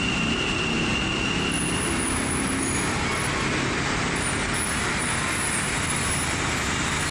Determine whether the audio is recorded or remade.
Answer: recorded